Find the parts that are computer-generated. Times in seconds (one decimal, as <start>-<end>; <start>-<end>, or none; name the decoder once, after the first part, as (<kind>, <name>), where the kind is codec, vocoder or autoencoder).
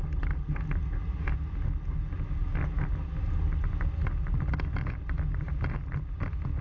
none